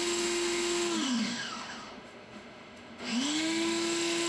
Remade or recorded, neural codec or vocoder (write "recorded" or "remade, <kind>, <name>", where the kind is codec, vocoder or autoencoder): remade, autoencoder, DAC-VAE